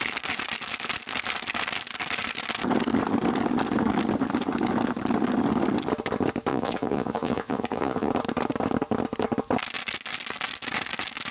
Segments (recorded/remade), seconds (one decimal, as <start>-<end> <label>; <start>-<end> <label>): 0.0-6.5 recorded; 6.5-8.1 remade; 8.1-11.3 recorded